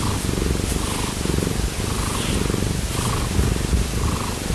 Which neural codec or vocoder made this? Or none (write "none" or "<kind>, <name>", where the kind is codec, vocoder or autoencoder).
none